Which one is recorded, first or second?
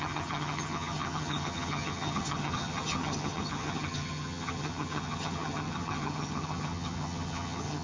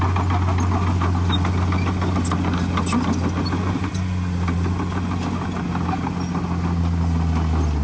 second